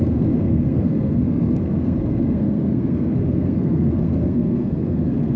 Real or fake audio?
fake